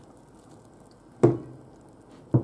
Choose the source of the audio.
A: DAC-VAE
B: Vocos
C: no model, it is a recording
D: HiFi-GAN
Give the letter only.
C